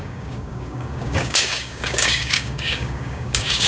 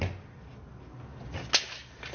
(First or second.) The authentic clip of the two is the second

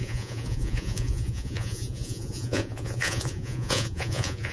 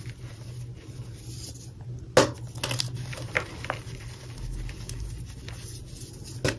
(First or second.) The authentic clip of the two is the second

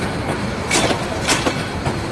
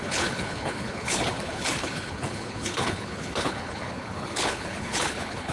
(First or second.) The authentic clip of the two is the first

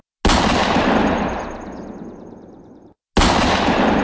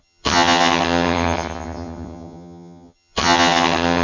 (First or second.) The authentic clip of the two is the first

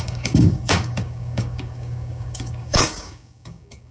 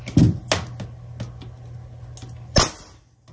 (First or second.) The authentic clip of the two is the second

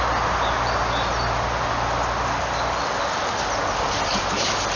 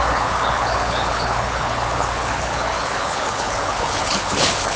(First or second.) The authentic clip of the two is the first